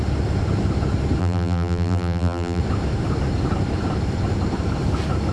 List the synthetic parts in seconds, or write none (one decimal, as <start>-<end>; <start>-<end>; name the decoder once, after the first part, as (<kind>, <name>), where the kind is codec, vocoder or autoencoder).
1.2-2.6 (vocoder, BigVGAN v2)